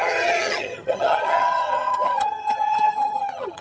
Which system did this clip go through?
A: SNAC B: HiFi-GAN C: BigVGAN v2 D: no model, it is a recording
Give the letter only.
B